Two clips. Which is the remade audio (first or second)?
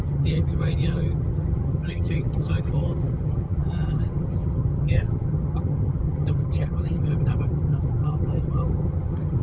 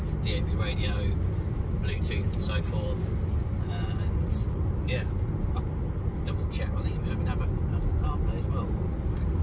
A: first